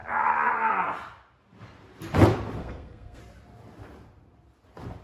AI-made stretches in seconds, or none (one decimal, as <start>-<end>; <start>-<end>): 2.6-3.2